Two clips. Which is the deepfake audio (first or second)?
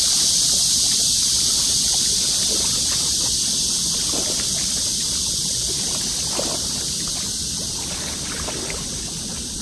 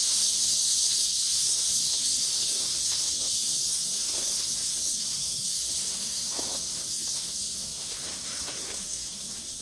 second